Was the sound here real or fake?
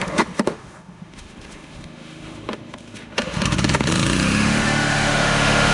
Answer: fake